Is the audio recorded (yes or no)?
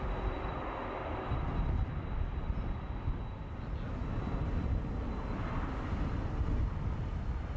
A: yes